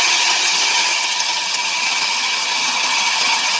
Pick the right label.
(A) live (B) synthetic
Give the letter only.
B